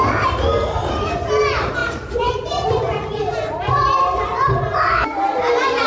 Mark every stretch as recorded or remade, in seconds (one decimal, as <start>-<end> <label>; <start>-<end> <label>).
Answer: 0.0-5.9 recorded